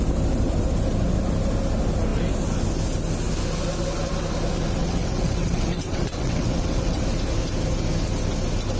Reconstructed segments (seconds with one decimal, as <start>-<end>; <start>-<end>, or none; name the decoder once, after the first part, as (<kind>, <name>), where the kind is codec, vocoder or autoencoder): 4.8-7.0 (vocoder, WaveNeXt)